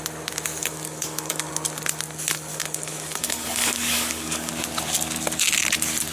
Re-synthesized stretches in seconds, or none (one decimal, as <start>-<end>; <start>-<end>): 0.6-1.5; 2.5-4.5